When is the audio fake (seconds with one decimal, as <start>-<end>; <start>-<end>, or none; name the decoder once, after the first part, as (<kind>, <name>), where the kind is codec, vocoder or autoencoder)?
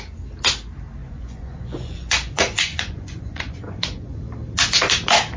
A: 1.0-4.2 (vocoder, Vocos)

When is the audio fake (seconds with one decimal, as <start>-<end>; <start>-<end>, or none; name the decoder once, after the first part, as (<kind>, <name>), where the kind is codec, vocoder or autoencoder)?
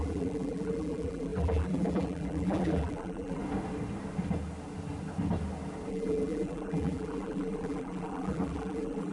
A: 0.0-3.4 (vocoder, BigVGAN v2); 5.9-9.1